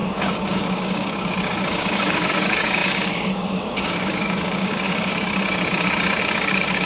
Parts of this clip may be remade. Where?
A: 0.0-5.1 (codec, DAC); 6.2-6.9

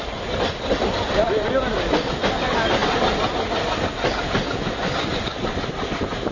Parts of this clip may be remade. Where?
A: none

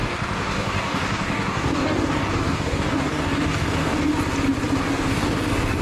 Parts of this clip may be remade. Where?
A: 0.0-4.1 (codec, DAC); 4.8-5.8

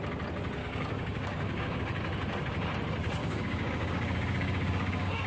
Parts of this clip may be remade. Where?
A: 0.6-1.8 (codec, DAC); 3.2-5.3

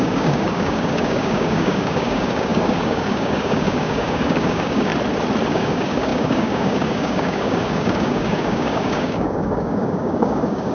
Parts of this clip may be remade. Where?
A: 0.0-4.9 (codec, DAC); 5.5-10.7